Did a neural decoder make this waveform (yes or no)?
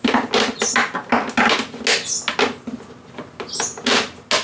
no